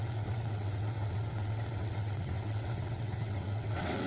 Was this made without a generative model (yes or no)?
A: no